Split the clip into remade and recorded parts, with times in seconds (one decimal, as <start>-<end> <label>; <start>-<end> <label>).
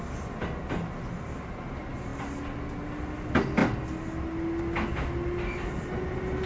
0.0-6.5 recorded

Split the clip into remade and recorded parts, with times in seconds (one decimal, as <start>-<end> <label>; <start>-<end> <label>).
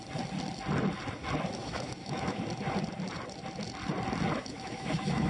0.0-1.6 recorded; 1.6-2.4 remade; 2.4-4.4 recorded; 4.4-5.3 remade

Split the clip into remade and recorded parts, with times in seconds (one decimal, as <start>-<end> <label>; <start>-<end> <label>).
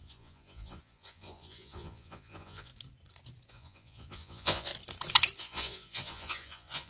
0.0-2.7 remade; 2.7-3.5 recorded; 3.5-4.7 remade; 4.7-5.4 recorded; 5.4-6.9 remade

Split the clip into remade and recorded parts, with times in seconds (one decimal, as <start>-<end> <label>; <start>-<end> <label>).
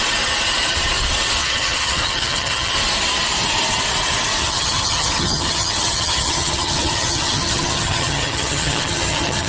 0.0-1.4 recorded; 1.4-2.7 remade; 2.7-4.4 recorded; 4.4-9.5 remade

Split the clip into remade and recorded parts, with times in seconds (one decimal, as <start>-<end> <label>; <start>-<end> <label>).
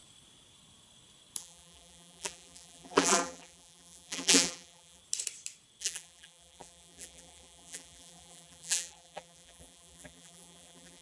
0.0-1.4 recorded; 1.4-5.0 remade; 5.0-5.8 recorded; 5.8-11.0 remade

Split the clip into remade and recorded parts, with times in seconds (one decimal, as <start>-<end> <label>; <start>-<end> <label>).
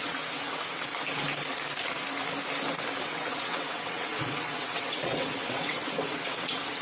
0.0-0.9 remade; 0.9-3.0 recorded; 3.0-6.8 remade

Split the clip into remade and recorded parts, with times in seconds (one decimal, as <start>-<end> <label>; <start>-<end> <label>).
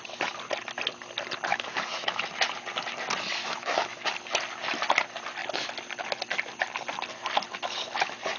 0.0-1.5 recorded; 1.5-2.2 remade; 2.2-3.4 recorded; 3.4-4.1 remade; 4.1-8.4 recorded